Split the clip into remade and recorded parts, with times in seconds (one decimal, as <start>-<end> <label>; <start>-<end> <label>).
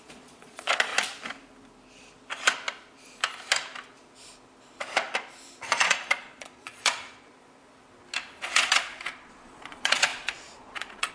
0.0-0.9 remade; 0.9-5.7 recorded; 5.7-7.3 remade; 7.3-8.4 recorded; 8.4-11.1 remade